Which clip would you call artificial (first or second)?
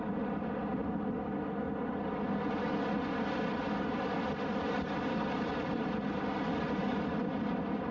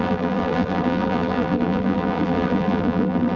second